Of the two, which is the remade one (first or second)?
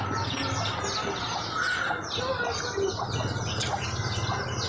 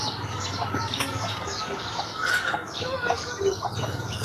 second